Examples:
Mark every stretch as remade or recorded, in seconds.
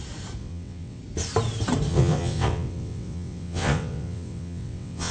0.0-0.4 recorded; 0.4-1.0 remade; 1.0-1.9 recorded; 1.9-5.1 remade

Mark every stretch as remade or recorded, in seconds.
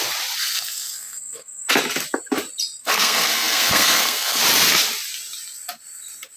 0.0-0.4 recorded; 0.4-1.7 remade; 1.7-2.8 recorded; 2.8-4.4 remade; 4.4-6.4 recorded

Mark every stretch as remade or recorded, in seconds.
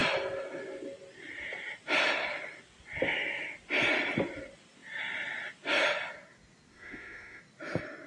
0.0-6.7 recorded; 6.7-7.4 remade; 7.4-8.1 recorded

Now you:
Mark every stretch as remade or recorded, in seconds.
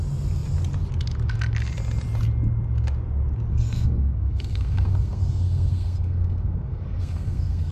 0.0-3.5 recorded; 3.5-7.7 remade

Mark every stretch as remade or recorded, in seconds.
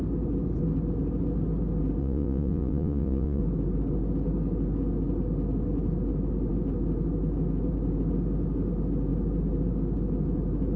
0.0-2.0 recorded; 2.0-3.4 remade; 3.4-10.8 recorded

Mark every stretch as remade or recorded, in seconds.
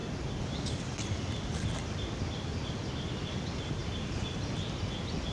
0.0-3.8 remade; 3.8-5.3 recorded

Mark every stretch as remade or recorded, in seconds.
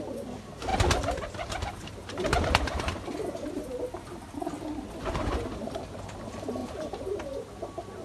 0.0-0.7 recorded; 0.7-4.2 remade; 4.2-6.6 recorded; 6.6-7.4 remade; 7.4-8.0 recorded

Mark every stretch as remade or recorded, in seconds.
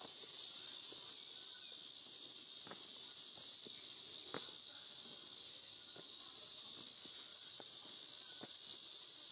0.0-7.3 recorded; 7.3-8.0 remade; 8.0-9.3 recorded